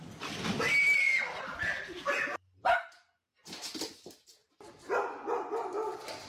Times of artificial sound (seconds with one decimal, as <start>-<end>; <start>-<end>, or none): 4.4-5.7